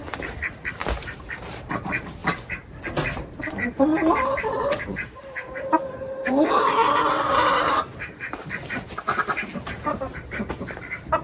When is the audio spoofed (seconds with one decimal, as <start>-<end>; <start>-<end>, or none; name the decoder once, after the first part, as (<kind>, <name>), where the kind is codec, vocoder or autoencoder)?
0.0-2.2 (vocoder, BigVGAN v2); 3.5-5.8; 7.2-11.2